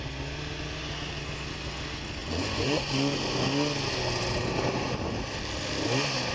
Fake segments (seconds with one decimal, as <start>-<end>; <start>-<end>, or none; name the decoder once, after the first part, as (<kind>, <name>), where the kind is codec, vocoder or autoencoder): 2.2-2.9 (vocoder, Vocos)